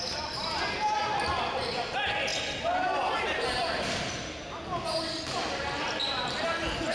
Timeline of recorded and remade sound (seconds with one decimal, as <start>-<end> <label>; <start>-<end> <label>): 0.0-6.9 recorded

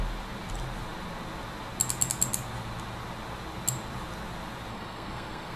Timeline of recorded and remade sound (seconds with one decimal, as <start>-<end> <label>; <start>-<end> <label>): 0.0-4.7 recorded; 4.7-5.6 remade